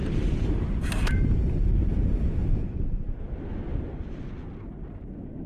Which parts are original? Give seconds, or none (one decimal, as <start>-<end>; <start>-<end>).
3.3-5.5